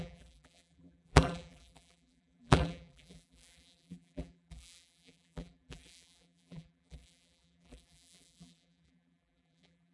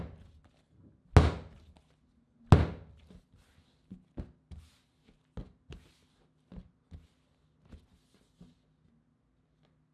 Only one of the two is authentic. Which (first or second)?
second